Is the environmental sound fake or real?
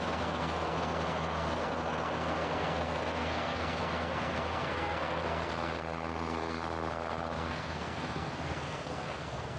fake